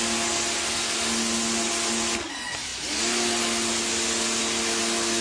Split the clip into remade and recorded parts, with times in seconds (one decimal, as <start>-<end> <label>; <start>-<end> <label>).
0.0-5.2 recorded